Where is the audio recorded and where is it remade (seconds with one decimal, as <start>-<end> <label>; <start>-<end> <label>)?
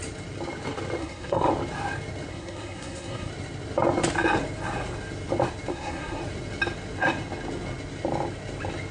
0.0-1.0 recorded; 1.0-1.5 remade; 1.5-2.3 recorded; 2.3-3.3 remade; 3.3-5.7 recorded; 5.7-6.2 remade; 6.2-8.9 recorded